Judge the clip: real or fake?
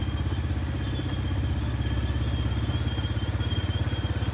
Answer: real